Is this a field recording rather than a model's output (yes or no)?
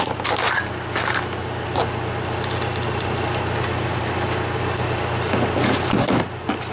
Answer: yes